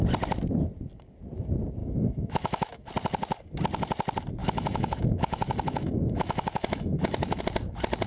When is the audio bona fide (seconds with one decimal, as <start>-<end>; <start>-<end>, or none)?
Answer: 0.0-1.8; 2.9-4.4; 7.4-8.1